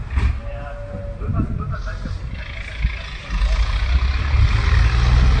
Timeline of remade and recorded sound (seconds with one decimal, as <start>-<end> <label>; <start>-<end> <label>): 0.0-5.4 recorded